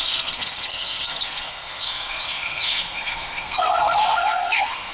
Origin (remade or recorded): remade